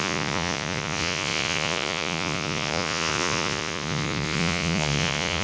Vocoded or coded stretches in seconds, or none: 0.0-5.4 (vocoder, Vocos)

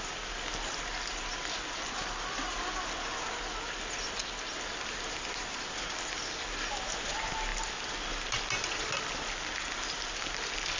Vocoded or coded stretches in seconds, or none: none

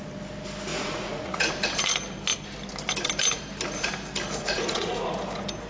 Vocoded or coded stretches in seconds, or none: 0.7-1.5 (vocoder, Vocos); 4.4-5.1

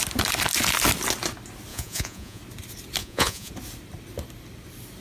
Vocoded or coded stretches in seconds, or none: 1.7-2.4 (vocoder, Vocos); 3.0-3.5

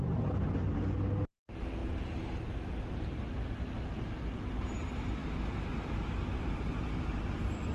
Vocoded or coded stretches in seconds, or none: none